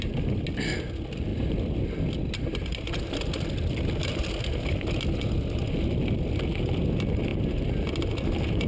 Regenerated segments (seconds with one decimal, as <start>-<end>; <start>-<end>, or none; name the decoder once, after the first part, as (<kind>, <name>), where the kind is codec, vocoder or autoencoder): none